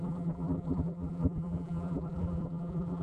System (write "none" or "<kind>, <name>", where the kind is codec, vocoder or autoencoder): vocoder, BigVGAN v2